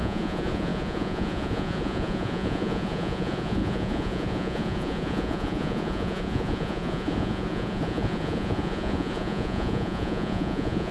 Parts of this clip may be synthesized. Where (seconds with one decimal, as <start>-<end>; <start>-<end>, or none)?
0.0-10.9